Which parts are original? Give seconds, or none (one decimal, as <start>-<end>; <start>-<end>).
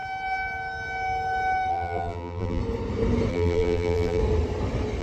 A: 0.0-1.7; 2.6-3.3; 4.2-5.0